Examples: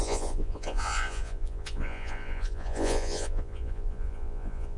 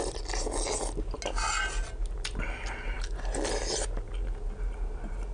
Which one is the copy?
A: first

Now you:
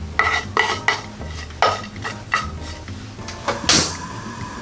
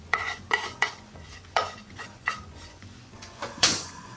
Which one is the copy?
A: second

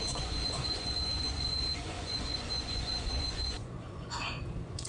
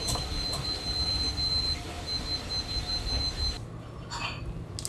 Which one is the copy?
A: first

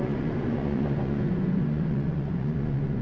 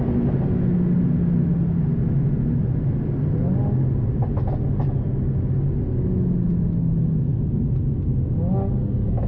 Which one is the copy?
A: first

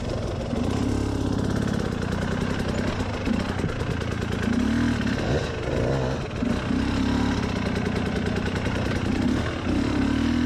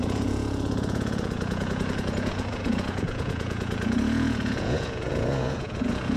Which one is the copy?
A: second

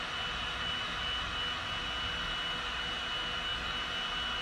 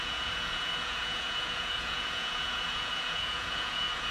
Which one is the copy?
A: second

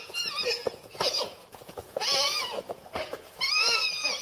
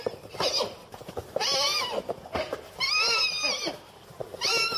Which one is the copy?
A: first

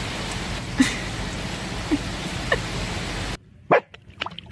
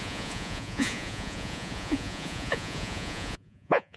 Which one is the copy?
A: second